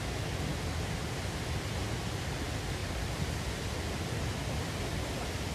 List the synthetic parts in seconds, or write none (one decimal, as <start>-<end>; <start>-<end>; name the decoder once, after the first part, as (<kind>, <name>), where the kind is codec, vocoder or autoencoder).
none